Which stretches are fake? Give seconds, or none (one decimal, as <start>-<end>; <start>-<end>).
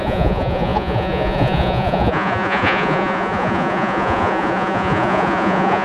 0.0-5.8